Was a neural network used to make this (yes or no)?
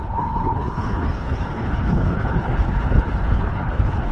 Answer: yes